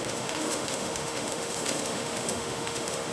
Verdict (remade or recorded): remade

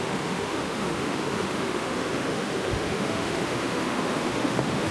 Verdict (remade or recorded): remade